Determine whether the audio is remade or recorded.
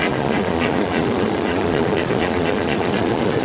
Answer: remade